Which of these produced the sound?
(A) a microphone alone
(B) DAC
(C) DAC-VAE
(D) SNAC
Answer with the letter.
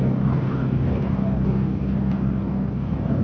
B